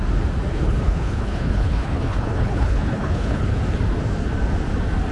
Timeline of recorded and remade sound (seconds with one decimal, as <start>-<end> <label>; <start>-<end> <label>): 0.0-0.5 recorded; 0.5-3.6 remade; 3.6-5.1 recorded